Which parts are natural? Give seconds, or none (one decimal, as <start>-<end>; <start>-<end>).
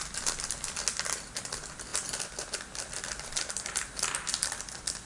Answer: 0.0-5.1